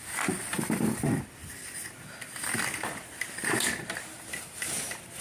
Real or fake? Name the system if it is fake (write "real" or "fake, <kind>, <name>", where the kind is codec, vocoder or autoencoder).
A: real